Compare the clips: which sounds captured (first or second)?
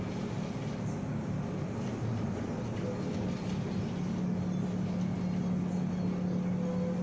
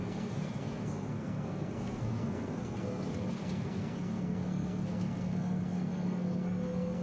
first